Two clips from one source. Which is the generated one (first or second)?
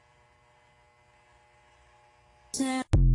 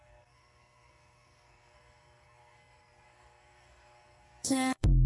second